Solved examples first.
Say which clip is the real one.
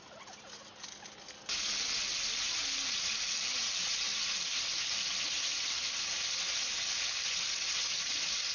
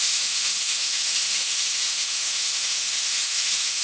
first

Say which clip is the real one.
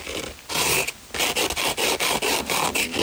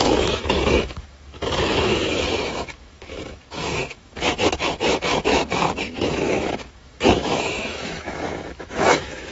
first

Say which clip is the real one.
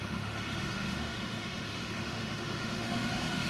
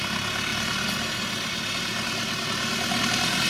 second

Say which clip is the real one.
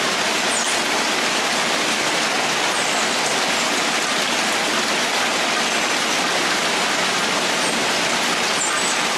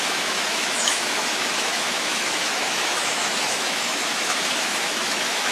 first